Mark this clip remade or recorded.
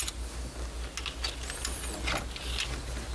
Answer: recorded